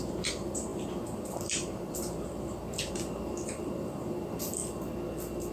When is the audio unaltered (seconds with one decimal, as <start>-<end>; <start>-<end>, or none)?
4.6-5.5